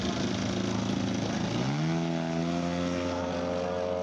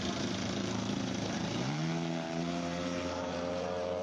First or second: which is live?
first